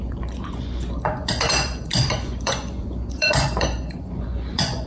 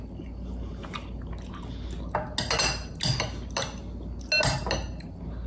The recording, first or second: second